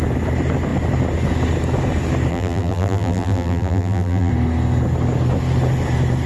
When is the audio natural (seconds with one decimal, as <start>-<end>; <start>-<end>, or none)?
0.0-2.3; 4.3-6.3